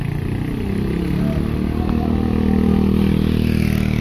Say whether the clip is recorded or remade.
recorded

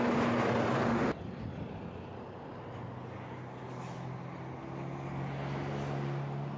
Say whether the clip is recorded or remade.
recorded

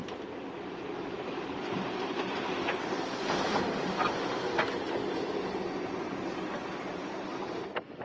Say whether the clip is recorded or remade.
recorded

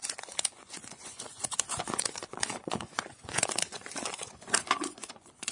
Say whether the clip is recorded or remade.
remade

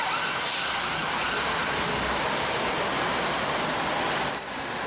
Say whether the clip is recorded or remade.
recorded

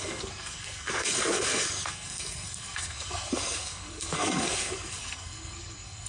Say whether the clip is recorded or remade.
remade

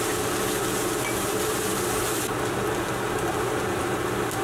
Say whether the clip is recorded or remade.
recorded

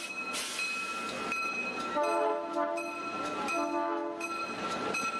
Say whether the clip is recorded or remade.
recorded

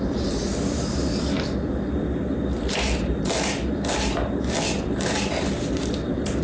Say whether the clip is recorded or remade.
recorded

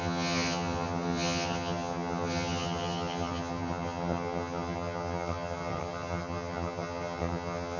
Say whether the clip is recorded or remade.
remade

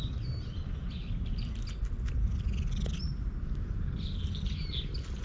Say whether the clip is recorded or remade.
recorded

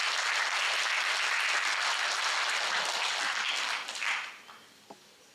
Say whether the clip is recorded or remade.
recorded